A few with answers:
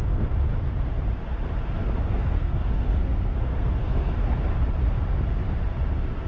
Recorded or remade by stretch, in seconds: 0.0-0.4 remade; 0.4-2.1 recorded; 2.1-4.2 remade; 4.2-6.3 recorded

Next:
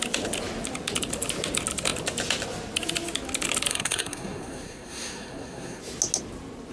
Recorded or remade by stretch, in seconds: 0.0-3.7 recorded; 3.7-5.8 remade; 5.8-6.7 recorded

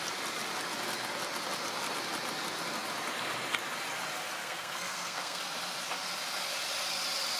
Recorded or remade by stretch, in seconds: 0.0-4.4 recorded; 4.4-5.4 remade; 5.4-7.4 recorded

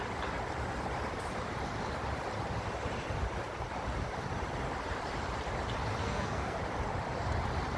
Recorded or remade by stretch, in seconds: 0.0-6.0 recorded; 6.0-6.6 remade; 6.6-7.8 recorded

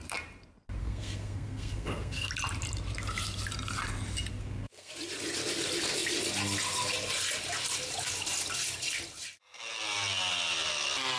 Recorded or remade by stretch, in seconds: 0.0-0.8 recorded; 0.8-2.3 remade; 2.3-4.3 recorded; 4.3-4.9 remade; 4.9-11.2 recorded